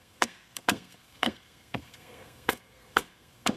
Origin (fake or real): fake